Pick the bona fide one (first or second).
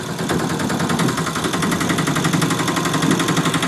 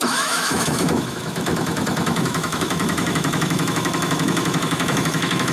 first